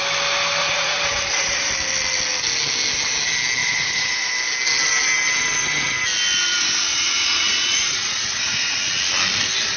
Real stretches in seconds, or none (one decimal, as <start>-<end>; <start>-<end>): 0.0-0.6; 1.7-3.6; 4.3-6.9; 8.8-9.8